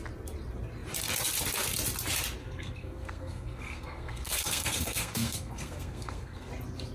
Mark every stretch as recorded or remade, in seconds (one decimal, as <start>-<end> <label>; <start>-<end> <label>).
0.0-2.4 recorded; 2.4-6.5 remade; 6.5-6.9 recorded